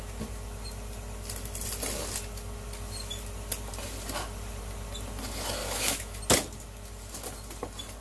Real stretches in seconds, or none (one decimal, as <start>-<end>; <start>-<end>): 0.0-5.6; 6.2-8.0